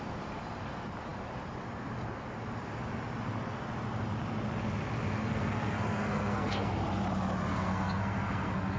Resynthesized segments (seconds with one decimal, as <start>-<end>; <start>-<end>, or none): 5.2-6.7; 7.5-8.8